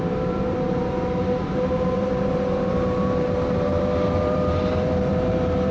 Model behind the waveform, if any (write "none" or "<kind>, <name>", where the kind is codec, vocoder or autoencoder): vocoder, BigVGAN v2